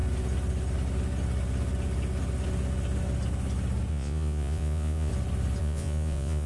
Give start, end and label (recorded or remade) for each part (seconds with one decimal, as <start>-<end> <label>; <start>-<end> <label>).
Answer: 0.0-3.9 recorded; 3.9-5.1 remade; 5.1-5.6 recorded; 5.6-6.5 remade